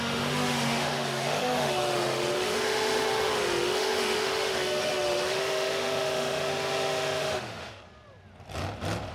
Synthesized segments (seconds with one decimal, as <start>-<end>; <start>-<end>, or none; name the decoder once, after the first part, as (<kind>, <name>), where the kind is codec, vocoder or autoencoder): 0.0-7.8 (autoencoder, DAC-VAE)